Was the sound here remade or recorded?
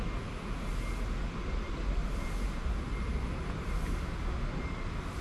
recorded